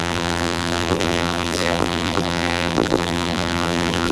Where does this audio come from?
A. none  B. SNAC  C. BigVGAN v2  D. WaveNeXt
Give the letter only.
C